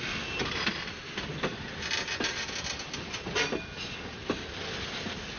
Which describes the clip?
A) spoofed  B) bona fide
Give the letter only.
B